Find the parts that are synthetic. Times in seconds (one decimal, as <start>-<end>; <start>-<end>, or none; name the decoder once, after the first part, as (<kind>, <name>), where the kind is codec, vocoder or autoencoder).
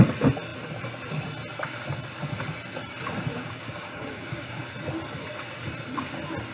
3.3-4.6 (codec, DAC)